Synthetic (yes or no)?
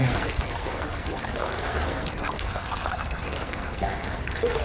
yes